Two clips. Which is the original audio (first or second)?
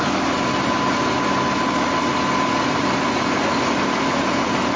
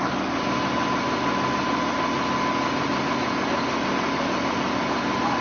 second